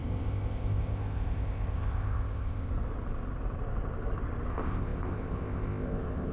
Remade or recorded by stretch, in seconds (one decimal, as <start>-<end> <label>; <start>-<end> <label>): 0.0-2.7 remade; 2.7-4.5 recorded; 4.5-6.3 remade